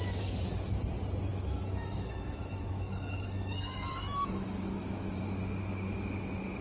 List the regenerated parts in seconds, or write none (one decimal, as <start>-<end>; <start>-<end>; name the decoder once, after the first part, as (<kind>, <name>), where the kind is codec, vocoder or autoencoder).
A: 1.3-5.2 (autoencoder, DAC-VAE)